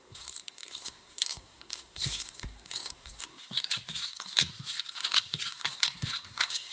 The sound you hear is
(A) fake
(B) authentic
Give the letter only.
A